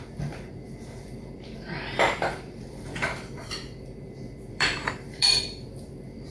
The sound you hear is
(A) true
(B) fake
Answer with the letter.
B